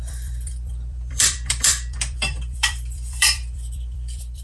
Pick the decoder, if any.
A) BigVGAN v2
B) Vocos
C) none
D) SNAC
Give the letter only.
A